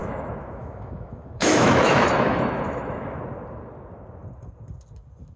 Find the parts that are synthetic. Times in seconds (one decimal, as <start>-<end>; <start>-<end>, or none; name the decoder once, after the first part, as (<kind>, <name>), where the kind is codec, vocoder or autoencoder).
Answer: 0.0-3.2 (autoencoder, DAC-VAE)